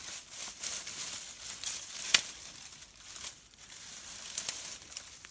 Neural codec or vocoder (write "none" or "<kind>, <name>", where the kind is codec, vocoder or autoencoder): none